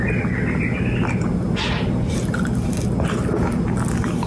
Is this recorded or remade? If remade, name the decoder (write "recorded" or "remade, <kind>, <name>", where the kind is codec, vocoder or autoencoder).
recorded